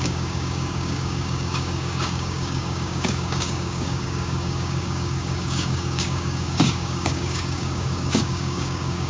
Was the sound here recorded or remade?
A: remade